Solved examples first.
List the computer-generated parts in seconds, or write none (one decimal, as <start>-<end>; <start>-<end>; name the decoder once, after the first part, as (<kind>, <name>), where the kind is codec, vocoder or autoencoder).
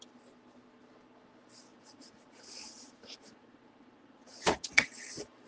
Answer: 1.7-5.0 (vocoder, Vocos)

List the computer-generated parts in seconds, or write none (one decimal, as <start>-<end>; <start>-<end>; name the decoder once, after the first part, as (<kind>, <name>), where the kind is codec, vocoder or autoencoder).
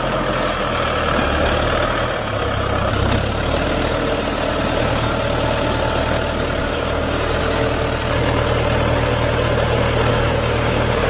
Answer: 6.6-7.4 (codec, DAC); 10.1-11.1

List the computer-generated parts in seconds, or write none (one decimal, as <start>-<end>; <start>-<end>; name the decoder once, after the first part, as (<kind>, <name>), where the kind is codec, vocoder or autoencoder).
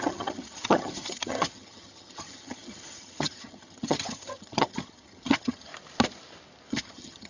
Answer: 0.0-5.7 (vocoder, HiFi-GAN); 6.7-7.3